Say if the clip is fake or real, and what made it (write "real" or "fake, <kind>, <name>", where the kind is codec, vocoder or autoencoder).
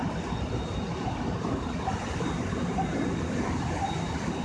real